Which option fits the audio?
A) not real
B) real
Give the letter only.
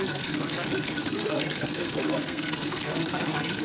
A